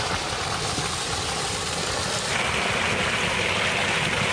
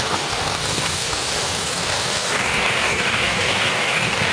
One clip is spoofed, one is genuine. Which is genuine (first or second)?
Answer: first